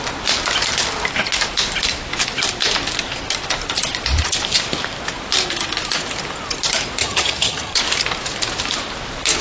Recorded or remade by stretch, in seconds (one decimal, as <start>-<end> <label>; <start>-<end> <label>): 0.0-7.0 recorded; 7.0-7.8 remade; 7.8-9.4 recorded